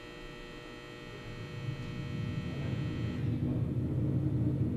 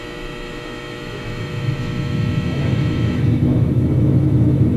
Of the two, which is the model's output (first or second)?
second